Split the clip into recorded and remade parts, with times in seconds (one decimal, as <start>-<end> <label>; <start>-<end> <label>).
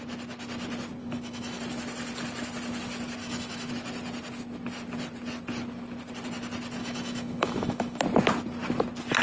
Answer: 0.0-1.0 recorded; 1.0-1.6 remade; 1.6-3.2 recorded; 3.2-3.7 remade; 3.7-6.8 recorded; 6.8-8.0 remade; 8.0-9.2 recorded